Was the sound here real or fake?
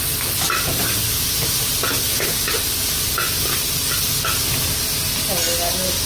real